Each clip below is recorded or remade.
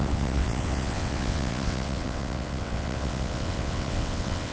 remade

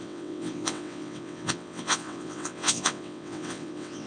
remade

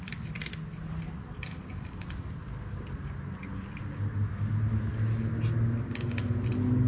recorded